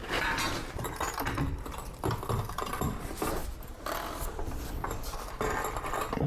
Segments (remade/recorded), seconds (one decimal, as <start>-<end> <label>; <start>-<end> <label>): 0.0-3.4 remade; 3.4-4.6 recorded; 4.6-6.3 remade